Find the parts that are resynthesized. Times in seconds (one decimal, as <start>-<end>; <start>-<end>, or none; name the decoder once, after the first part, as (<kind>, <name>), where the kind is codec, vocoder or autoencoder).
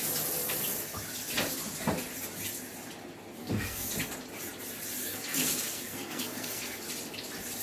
3.3-3.9 (codec, SNAC); 5.1-6.8